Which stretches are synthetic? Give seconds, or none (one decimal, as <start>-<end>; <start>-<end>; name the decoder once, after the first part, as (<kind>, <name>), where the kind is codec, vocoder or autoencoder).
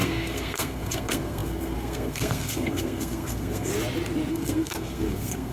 0.0-3.7 (codec, SNAC); 4.3-5.5